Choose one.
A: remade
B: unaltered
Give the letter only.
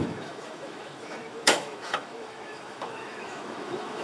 A